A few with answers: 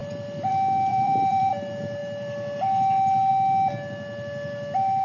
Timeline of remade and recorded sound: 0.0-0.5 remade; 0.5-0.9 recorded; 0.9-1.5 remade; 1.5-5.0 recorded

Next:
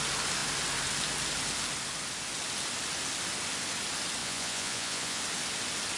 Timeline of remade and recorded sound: 0.0-4.2 recorded; 4.2-5.2 remade; 5.2-6.0 recorded

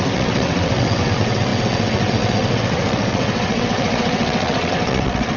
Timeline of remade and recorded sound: 0.0-5.4 remade

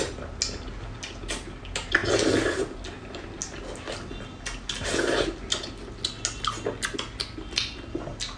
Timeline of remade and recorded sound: 0.0-8.4 recorded

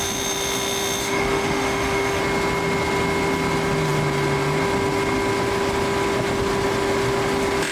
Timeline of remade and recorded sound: 0.0-1.0 recorded; 1.0-2.2 remade; 2.2-7.7 recorded